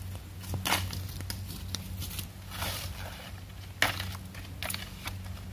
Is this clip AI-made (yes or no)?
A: no